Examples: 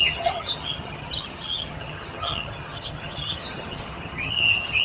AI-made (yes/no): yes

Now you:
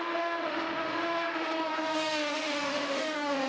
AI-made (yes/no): yes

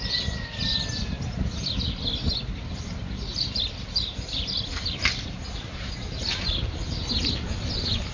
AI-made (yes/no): no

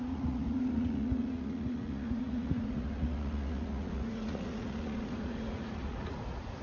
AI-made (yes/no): yes